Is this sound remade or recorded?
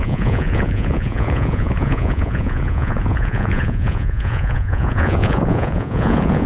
remade